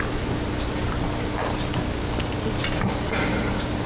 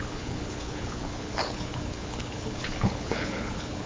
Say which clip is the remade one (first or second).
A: second